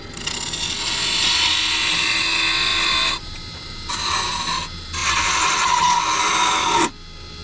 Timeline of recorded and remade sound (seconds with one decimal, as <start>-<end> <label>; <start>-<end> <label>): 0.0-2.7 recorded; 2.7-4.4 remade; 4.4-5.0 recorded; 5.0-6.0 remade; 6.0-7.4 recorded

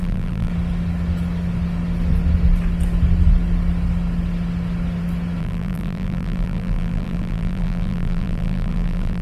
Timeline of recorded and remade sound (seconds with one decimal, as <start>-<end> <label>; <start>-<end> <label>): 0.0-0.5 remade; 0.5-5.4 recorded; 5.4-9.2 remade

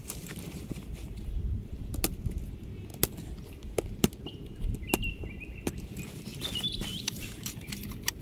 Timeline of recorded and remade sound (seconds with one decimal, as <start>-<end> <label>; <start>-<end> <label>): 0.0-1.7 remade; 1.7-6.3 recorded; 6.3-8.2 remade

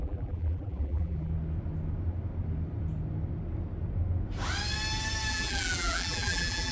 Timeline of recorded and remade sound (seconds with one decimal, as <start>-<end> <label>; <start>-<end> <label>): 0.0-1.3 remade; 1.3-5.3 recorded; 5.3-6.7 remade